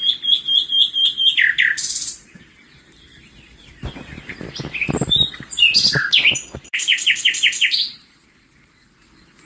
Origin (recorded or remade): recorded